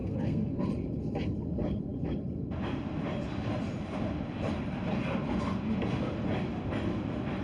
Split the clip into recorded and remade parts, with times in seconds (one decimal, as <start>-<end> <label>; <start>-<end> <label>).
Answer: 0.0-0.6 remade; 0.6-7.4 recorded